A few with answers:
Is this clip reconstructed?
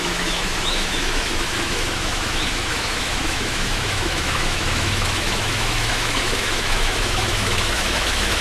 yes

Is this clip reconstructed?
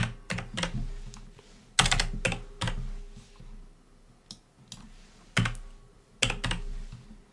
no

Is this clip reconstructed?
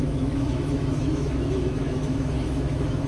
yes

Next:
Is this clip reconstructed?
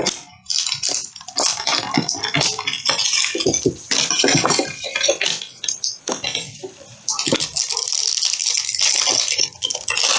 no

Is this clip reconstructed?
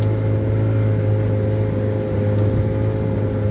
no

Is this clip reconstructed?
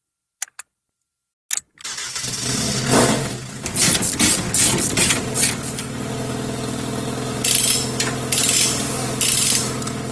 no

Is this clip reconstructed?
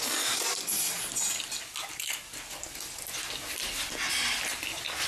no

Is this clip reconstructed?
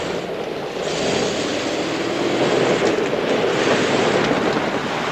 no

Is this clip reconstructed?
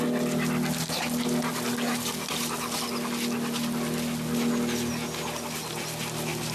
no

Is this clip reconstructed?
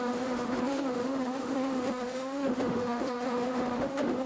yes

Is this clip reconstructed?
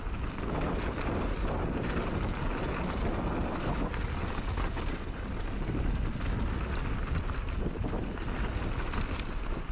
no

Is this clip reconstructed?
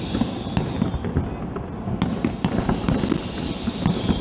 no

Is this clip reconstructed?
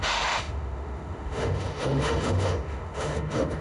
yes